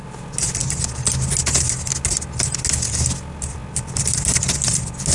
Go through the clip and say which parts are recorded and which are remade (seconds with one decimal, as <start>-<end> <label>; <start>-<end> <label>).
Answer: 0.0-5.1 recorded